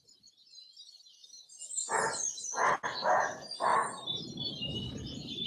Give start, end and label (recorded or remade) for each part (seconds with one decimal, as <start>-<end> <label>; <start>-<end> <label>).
0.0-5.5 recorded